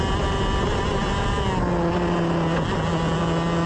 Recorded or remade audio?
recorded